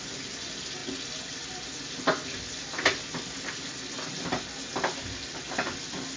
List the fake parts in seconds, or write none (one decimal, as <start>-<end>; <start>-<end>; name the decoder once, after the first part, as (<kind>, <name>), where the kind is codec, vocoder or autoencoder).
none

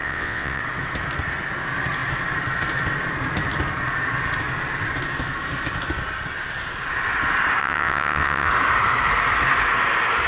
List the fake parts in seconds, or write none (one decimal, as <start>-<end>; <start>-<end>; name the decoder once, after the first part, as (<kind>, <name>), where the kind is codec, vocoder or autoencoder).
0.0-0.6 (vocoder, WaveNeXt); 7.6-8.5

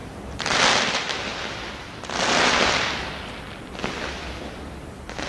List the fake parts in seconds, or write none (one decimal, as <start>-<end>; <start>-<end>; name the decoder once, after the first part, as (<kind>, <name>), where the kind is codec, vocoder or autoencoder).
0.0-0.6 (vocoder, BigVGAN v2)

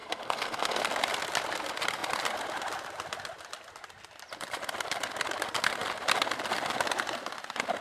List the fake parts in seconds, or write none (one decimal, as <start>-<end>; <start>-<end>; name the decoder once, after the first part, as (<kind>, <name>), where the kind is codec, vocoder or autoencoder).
0.0-0.8 (codec, SNAC)

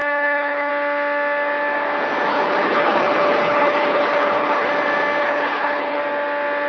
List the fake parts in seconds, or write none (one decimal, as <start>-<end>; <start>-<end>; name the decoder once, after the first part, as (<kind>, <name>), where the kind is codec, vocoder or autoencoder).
0.0-0.7 (codec, HILCodec); 2.3-4.7; 5.2-6.0